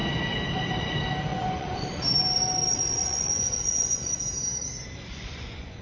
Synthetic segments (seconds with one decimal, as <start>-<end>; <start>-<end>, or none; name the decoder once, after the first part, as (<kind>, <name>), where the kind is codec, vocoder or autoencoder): 1.3-2.0 (vocoder, Vocos); 3.0-4.1; 5.1-5.8